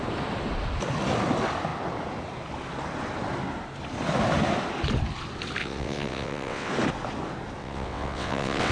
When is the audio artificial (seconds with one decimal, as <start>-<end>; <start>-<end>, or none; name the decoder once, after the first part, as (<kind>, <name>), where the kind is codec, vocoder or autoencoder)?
5.6-6.7 (vocoder, WaveNeXt); 7.6-8.7